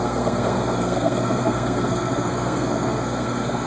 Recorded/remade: remade